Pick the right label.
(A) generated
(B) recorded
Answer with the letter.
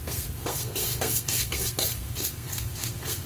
A